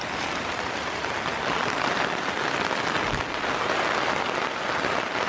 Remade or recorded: recorded